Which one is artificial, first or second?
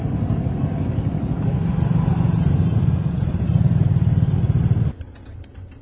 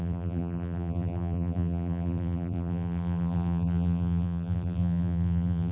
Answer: second